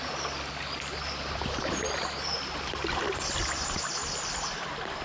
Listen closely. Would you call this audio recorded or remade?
recorded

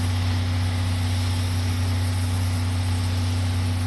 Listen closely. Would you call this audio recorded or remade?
recorded